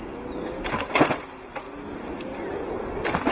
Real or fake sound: real